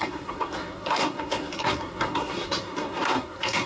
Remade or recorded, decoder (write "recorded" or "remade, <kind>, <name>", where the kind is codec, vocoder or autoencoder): remade, codec, SNAC